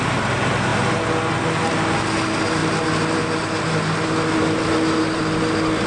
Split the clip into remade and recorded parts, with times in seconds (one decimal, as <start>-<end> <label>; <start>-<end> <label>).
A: 0.0-5.9 recorded